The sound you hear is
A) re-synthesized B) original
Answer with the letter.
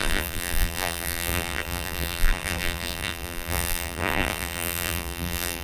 A